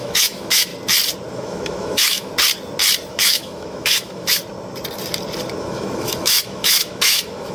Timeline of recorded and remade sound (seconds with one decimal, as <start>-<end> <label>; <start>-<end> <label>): 0.0-0.7 remade; 0.7-1.3 recorded; 1.3-2.3 remade; 2.3-3.1 recorded; 3.1-4.4 remade; 4.4-5.6 recorded; 5.6-7.5 remade